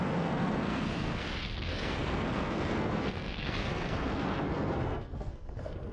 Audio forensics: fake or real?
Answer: fake